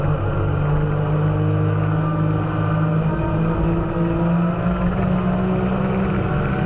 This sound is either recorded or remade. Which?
recorded